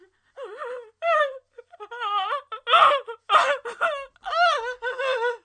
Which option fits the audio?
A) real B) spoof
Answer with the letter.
A